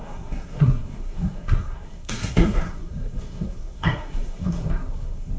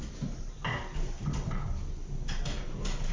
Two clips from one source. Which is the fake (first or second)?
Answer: first